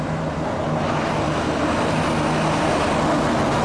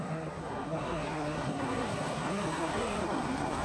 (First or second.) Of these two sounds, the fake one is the second